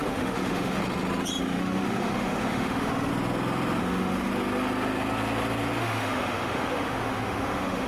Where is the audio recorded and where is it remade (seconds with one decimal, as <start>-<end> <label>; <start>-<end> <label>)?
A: 0.0-0.8 remade; 0.8-1.4 recorded; 1.4-3.1 remade; 3.1-3.8 recorded; 3.8-4.3 remade; 4.3-5.8 recorded; 5.8-7.9 remade

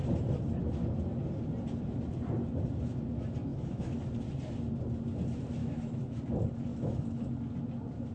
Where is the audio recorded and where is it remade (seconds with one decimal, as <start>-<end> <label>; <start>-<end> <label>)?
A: 0.0-3.5 recorded; 3.5-4.0 remade; 4.0-5.6 recorded; 5.6-6.2 remade; 6.2-6.7 recorded; 6.7-7.3 remade; 7.3-8.1 recorded

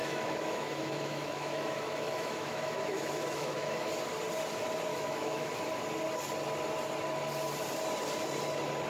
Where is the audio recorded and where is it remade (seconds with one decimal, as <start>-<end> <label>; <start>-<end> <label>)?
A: 0.0-3.9 remade; 3.9-4.9 recorded; 4.9-5.6 remade; 5.6-8.9 recorded